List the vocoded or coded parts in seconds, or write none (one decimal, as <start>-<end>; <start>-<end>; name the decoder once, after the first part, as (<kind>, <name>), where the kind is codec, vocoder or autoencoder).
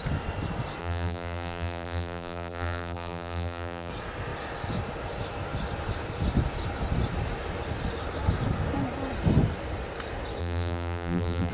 0.8-3.9 (vocoder, BigVGAN v2); 10.4-11.5